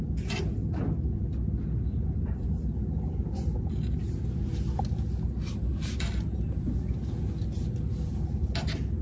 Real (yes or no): yes